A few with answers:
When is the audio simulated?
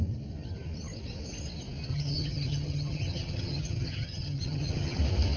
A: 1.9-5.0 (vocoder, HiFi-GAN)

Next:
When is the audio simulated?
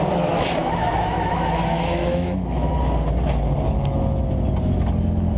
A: 0.6-2.7 (autoencoder, DAC-VAE)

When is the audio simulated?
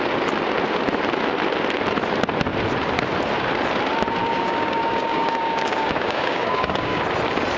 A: 4.2-7.0 (codec, DAC)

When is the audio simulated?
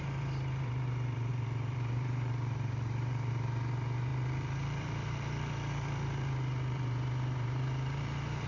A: 0.0-8.5 (vocoder, BigVGAN v2)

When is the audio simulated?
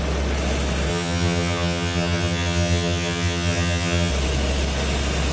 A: 0.9-4.1 (vocoder, HiFi-GAN)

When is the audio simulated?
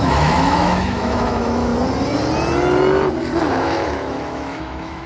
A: 0.0-1.7 (autoencoder, DAC-VAE); 3.5-5.1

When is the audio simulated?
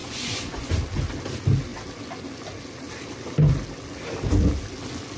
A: 0.0-0.7 (vocoder, Vocos)